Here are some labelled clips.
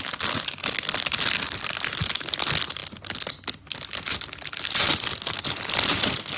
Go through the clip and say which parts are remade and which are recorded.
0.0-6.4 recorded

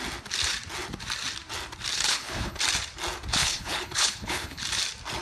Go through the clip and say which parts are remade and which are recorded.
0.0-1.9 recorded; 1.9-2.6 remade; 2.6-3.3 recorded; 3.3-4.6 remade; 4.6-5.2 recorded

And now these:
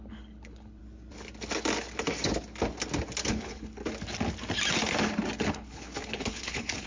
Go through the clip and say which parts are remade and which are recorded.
0.0-0.8 remade; 0.8-3.3 recorded; 3.3-3.8 remade; 3.8-5.4 recorded; 5.4-6.9 remade

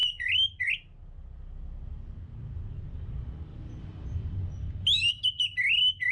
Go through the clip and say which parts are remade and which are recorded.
0.0-6.1 recorded

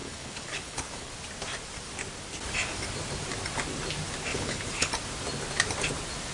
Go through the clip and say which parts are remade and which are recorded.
0.0-1.1 remade; 1.1-4.3 recorded; 4.3-4.9 remade; 4.9-6.3 recorded